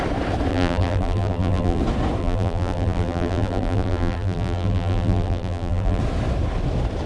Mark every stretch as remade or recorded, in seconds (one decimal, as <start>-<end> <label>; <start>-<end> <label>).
0.0-0.5 recorded; 0.5-1.8 remade; 1.8-2.2 recorded; 2.2-6.0 remade; 6.0-7.1 recorded